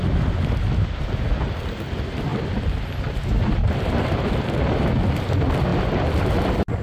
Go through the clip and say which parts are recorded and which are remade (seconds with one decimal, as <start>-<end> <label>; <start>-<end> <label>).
0.0-3.6 recorded; 3.6-4.5 remade; 4.5-6.8 recorded